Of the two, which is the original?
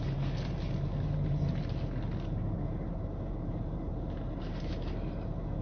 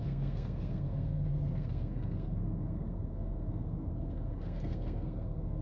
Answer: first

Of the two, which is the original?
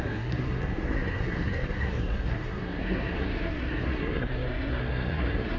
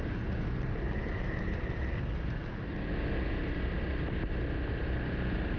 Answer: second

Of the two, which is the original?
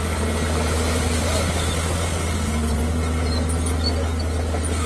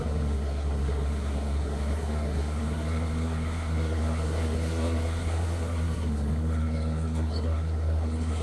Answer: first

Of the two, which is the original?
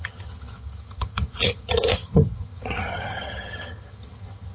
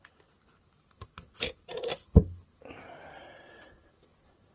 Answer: second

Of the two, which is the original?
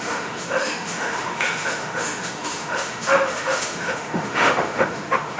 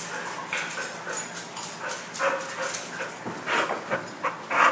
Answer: second